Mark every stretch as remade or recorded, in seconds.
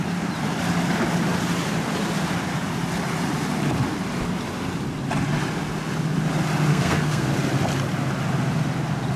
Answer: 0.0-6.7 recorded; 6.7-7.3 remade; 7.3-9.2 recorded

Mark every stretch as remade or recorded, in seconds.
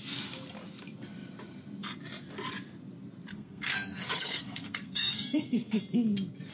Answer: 0.0-3.3 recorded; 3.3-5.8 remade; 5.8-6.5 recorded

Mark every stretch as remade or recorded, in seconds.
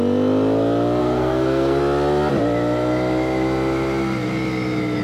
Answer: 0.0-1.0 recorded; 1.0-1.8 remade; 1.8-5.0 recorded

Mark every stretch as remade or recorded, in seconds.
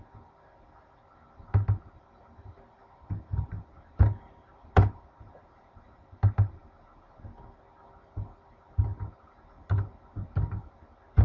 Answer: 0.0-11.2 recorded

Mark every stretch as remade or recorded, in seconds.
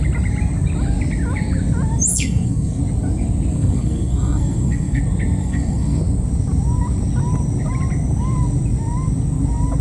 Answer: 0.0-2.1 recorded; 2.1-2.8 remade; 2.8-3.5 recorded; 3.5-5.0 remade; 5.0-5.4 recorded; 5.4-6.0 remade; 6.0-9.8 recorded